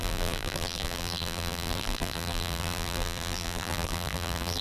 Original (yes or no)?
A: no